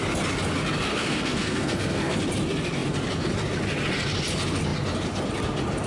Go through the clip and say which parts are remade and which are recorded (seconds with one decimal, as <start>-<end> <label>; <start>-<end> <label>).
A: 0.0-0.9 recorded; 0.9-2.2 remade; 2.2-5.9 recorded